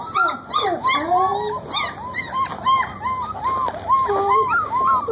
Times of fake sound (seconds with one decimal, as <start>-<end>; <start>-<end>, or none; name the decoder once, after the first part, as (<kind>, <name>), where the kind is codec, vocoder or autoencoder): none